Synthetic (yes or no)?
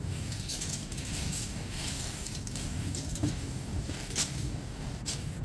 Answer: yes